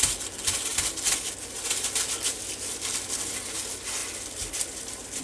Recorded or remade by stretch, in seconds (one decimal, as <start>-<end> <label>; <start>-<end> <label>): 0.0-4.0 recorded; 4.0-5.2 remade